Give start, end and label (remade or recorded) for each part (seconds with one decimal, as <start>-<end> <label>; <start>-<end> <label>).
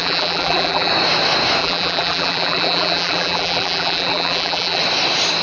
0.0-0.9 remade; 0.9-1.6 recorded; 1.6-4.8 remade; 4.8-5.4 recorded